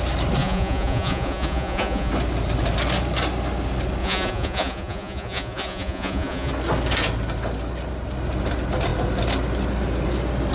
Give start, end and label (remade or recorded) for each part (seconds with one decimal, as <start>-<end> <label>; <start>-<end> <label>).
0.0-0.4 recorded; 0.4-2.1 remade; 2.1-4.0 recorded; 4.0-6.5 remade; 6.5-10.5 recorded